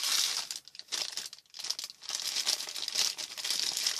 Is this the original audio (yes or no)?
yes